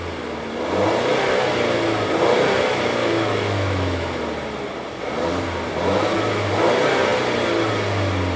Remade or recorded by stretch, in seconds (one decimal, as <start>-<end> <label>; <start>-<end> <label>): 0.0-3.0 recorded; 3.0-4.2 remade; 4.2-8.4 recorded